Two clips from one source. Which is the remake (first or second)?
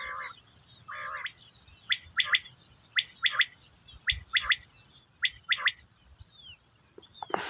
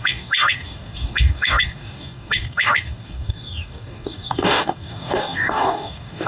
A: second